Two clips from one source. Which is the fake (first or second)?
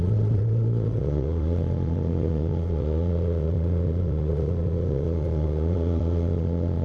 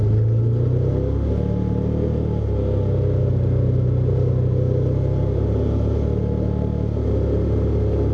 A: first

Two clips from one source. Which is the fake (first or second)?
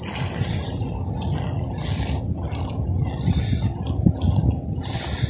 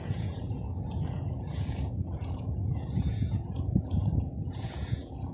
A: second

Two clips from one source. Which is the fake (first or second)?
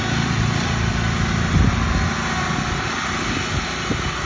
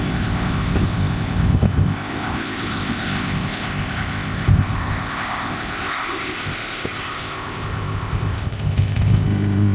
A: second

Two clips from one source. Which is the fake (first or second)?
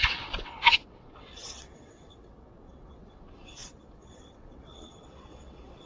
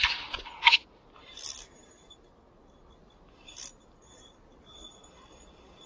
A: first